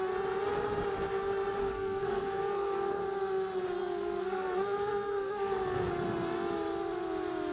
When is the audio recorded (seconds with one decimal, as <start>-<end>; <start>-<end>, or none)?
0.0-1.6; 2.9-3.8; 5.9-7.5